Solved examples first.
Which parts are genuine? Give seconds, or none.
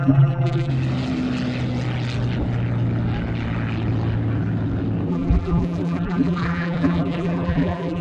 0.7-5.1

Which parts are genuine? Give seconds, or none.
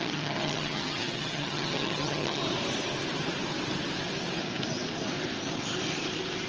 2.4-6.5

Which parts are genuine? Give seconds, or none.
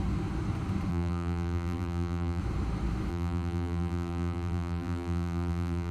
0.0-0.9; 2.4-3.1